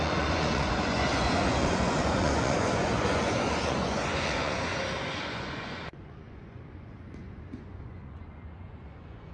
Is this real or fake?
fake